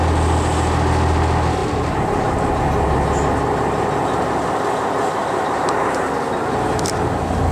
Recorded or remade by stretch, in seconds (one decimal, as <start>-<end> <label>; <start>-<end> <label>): 0.0-1.6 recorded; 1.6-2.5 remade; 2.5-5.2 recorded; 5.2-6.1 remade; 6.1-7.5 recorded